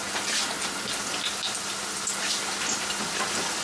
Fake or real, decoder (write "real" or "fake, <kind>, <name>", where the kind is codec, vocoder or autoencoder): real